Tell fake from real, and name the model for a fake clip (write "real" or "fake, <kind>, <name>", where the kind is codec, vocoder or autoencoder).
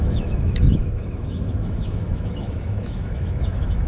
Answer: fake, autoencoder, DAC-VAE